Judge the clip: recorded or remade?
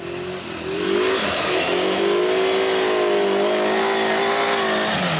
recorded